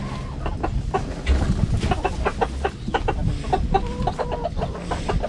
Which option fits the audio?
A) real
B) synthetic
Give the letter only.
A